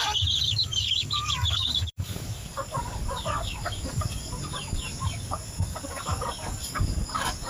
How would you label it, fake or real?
fake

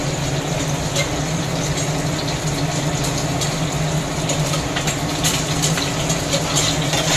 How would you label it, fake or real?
real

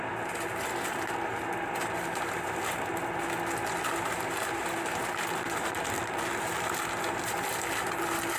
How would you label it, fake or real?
real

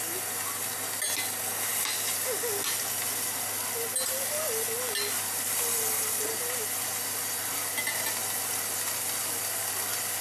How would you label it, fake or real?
real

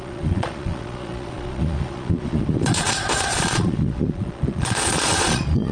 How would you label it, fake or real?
fake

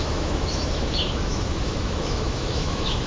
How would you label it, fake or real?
fake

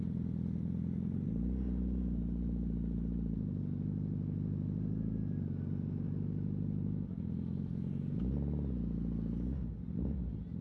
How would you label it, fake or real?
real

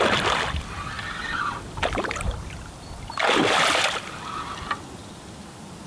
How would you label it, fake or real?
real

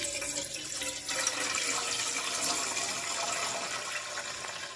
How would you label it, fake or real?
real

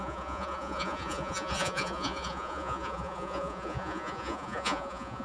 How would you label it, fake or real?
fake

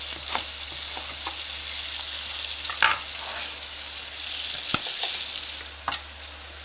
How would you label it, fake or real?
real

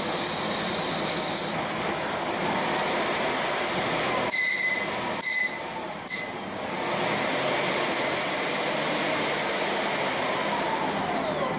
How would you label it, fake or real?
real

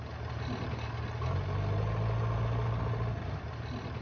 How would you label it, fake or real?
real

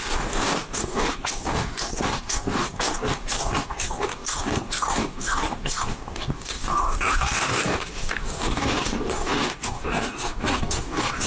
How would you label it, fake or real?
fake